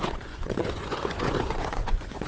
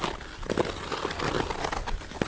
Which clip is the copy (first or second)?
first